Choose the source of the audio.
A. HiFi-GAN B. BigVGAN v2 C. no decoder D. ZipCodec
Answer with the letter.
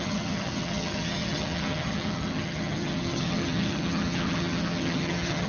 A